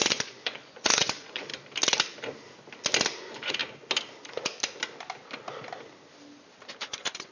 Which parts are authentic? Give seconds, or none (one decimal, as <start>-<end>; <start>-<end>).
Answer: 1.5-3.2; 3.6-6.8